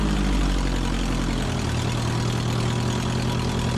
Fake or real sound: real